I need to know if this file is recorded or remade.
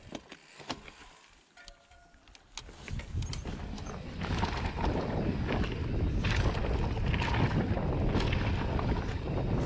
recorded